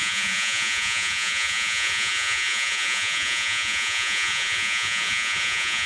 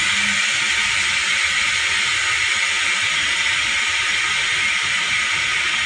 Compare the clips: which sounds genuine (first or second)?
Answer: second